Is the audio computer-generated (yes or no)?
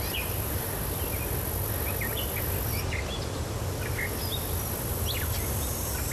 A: no